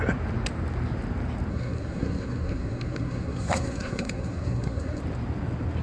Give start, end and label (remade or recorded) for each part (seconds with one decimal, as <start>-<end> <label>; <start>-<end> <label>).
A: 0.0-1.5 recorded; 1.5-5.0 remade; 5.0-5.8 recorded